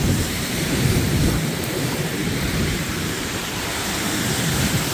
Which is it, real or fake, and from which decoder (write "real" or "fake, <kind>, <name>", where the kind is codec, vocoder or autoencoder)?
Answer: fake, vocoder, BigVGAN v2